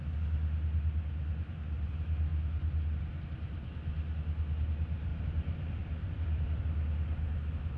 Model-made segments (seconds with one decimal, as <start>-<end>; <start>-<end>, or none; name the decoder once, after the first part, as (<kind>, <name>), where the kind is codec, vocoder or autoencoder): 5.1-6.6 (vocoder, BigVGAN v2)